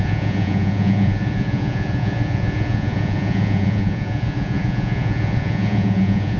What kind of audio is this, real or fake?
fake